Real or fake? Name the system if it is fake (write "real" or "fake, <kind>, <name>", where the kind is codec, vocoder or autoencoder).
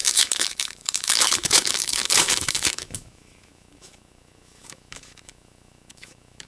fake, autoencoder, DAC-VAE